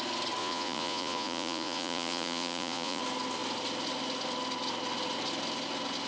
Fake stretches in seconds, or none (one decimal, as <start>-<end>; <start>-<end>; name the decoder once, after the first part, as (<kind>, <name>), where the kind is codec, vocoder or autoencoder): 0.4-3.0 (vocoder, Vocos)